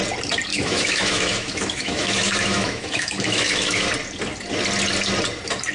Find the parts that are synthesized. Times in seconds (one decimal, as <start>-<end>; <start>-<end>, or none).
0.5-3.9